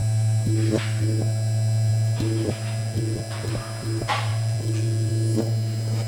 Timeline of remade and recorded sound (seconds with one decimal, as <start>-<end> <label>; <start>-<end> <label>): 0.0-2.8 recorded; 2.8-3.5 remade; 3.5-4.3 recorded; 4.3-5.1 remade; 5.1-6.1 recorded